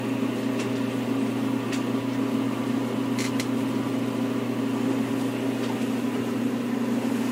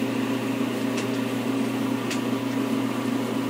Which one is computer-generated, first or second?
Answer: second